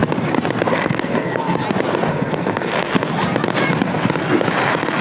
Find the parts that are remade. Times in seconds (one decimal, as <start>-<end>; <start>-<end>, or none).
0.7-1.6; 2.1-2.9